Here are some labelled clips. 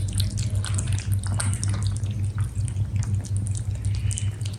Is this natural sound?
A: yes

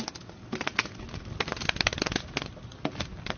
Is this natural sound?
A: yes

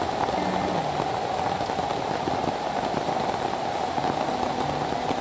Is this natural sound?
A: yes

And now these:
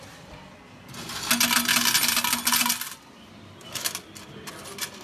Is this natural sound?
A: yes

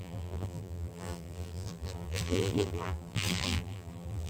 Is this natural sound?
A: no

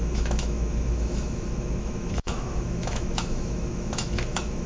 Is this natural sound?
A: no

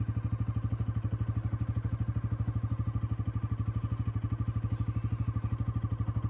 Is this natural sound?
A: yes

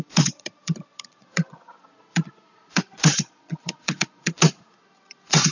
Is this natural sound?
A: no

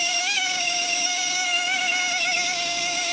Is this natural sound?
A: no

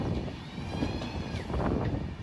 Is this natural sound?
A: yes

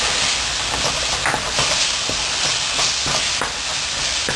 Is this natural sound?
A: yes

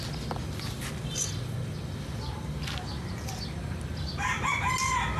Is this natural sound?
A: yes